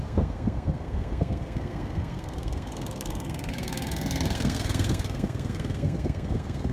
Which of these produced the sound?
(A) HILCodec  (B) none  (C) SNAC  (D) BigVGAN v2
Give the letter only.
C